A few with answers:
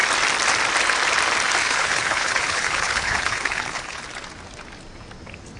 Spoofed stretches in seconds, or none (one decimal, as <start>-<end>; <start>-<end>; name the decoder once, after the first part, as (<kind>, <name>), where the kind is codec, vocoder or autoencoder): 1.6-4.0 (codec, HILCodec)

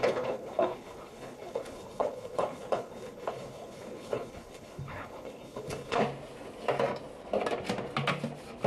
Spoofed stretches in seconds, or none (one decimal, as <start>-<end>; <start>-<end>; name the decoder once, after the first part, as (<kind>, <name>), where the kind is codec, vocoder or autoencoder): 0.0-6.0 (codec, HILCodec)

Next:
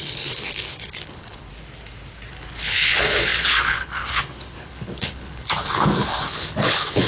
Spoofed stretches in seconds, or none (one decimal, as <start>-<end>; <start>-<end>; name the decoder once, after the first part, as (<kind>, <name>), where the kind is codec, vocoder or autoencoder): 0.0-1.5 (codec, HILCodec); 2.3-7.1

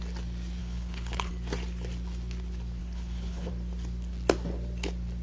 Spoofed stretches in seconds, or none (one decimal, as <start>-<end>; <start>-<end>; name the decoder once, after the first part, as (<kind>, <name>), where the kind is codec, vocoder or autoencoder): 0.6-1.3 (codec, HILCodec); 2.8-3.5

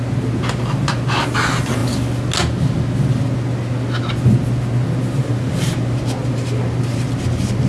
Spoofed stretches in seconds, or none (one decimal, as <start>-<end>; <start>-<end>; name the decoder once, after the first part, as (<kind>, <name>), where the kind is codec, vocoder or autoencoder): none